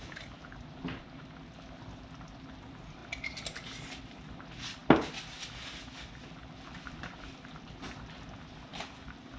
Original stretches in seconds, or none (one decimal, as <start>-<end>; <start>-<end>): 0.0-9.4